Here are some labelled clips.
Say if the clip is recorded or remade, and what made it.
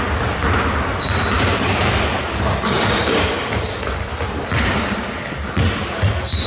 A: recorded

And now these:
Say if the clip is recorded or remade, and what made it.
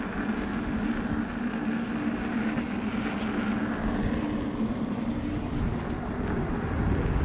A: recorded